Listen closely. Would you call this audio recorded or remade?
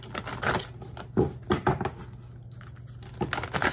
recorded